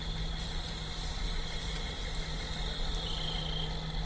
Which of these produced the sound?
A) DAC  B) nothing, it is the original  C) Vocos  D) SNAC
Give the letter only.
B